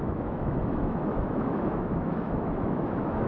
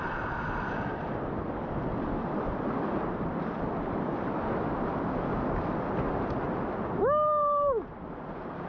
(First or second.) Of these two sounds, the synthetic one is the first